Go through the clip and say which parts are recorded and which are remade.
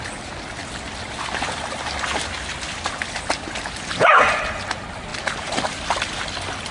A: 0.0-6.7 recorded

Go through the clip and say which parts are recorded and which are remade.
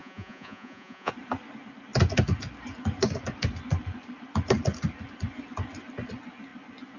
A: 0.0-1.1 remade; 1.1-7.0 recorded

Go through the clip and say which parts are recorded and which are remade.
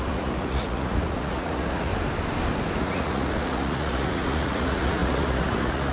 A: 0.0-1.9 remade; 1.9-2.8 recorded; 2.8-5.9 remade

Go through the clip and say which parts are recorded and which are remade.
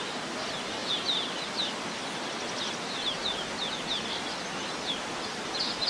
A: 0.0-5.9 recorded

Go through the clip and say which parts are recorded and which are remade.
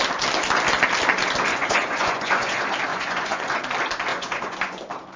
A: 0.0-1.5 recorded; 1.5-2.5 remade; 2.5-2.9 recorded; 2.9-3.4 remade; 3.4-4.1 recorded; 4.1-4.8 remade; 4.8-5.2 recorded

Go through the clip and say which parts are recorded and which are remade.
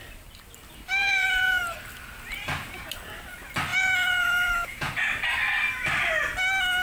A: 0.0-1.0 recorded; 1.0-1.6 remade; 1.6-3.7 recorded; 3.7-4.9 remade; 4.9-6.8 recorded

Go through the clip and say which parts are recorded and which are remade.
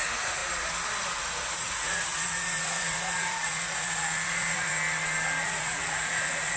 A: 0.0-0.4 remade; 0.4-1.5 recorded; 1.5-4.7 remade; 4.7-5.4 recorded; 5.4-6.6 remade